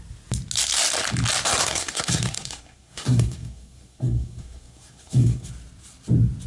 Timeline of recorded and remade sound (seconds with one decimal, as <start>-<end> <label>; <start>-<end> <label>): 0.0-1.6 recorded; 1.6-5.5 remade; 5.5-6.5 recorded